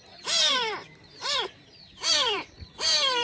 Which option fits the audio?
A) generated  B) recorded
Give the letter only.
A